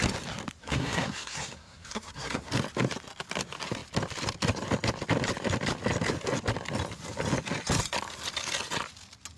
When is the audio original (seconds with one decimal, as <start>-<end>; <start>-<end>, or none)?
0.0-0.6; 2.5-9.4